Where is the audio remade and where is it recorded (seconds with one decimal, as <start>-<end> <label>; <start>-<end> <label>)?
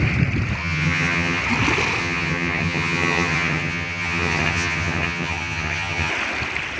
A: 0.0-0.6 recorded; 0.6-1.4 remade; 1.4-2.0 recorded; 2.0-6.1 remade; 6.1-6.8 recorded